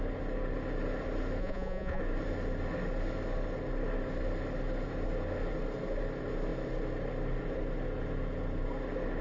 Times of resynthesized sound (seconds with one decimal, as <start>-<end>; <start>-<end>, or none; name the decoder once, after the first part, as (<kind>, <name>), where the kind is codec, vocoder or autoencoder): 1.4-2.0 (vocoder, Vocos)